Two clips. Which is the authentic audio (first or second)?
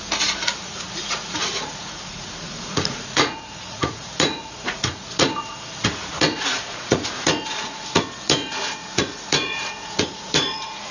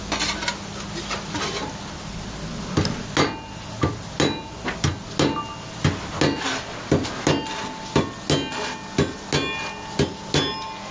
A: second